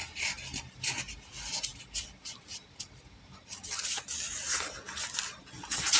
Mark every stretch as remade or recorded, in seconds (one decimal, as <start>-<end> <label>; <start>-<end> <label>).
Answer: 0.0-6.0 recorded